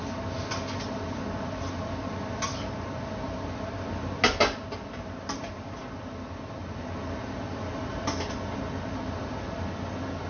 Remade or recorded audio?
recorded